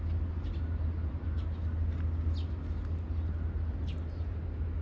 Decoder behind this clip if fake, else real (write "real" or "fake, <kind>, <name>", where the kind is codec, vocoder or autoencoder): real